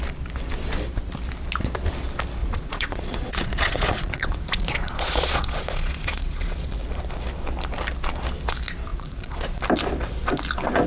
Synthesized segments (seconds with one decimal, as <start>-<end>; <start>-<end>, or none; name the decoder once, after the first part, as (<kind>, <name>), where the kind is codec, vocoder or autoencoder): 2.4-6.7 (vocoder, Vocos); 8.9-9.6